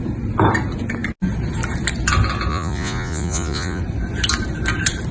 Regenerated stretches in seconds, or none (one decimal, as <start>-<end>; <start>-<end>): 2.5-3.8